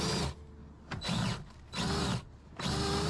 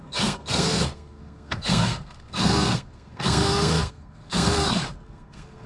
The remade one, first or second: second